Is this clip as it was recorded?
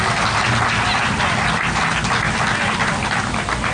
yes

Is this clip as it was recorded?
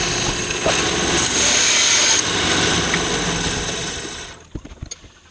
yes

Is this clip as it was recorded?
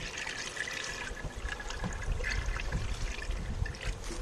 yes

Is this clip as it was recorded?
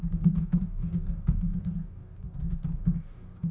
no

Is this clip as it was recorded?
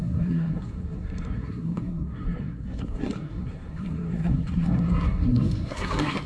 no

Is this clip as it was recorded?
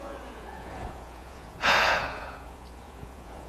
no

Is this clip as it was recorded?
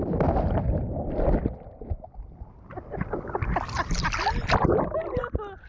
yes